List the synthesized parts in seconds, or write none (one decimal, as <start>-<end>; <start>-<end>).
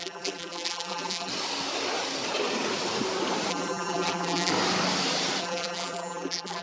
0.0-1.3; 3.5-4.5; 5.4-6.6